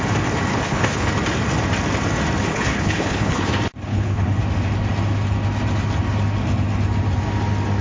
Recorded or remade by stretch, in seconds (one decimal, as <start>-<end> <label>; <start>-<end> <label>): 0.0-0.5 recorded; 0.5-1.1 remade; 1.1-2.5 recorded; 2.5-3.5 remade; 3.5-3.9 recorded; 3.9-4.4 remade; 4.4-7.8 recorded